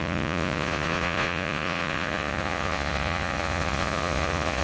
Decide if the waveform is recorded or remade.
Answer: remade